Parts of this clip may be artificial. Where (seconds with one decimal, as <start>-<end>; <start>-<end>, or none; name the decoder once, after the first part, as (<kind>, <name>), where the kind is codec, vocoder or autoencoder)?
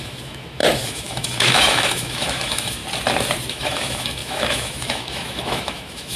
0.0-2.8 (autoencoder, DAC-VAE); 3.5-6.2